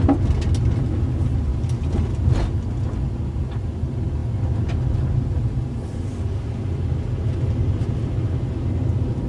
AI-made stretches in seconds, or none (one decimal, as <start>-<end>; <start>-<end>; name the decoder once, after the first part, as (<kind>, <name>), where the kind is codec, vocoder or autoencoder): none